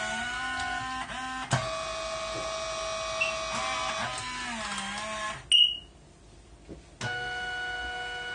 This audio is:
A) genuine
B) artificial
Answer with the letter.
A